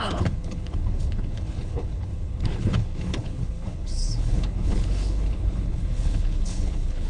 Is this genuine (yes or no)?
no